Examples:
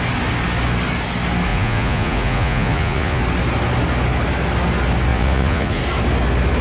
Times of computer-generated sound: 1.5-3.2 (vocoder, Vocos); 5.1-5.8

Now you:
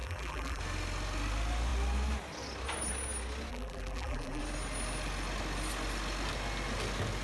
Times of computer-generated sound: 0.0-0.6 (vocoder, BigVGAN v2); 3.5-4.4

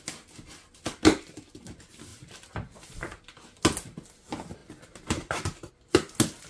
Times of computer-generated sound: 2.1-3.2 (vocoder, BigVGAN v2); 4.6-5.7

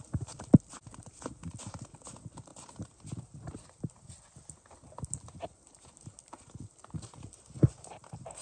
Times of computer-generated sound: none